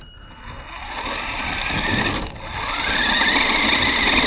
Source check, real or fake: real